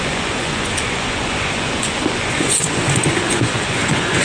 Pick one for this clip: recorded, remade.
remade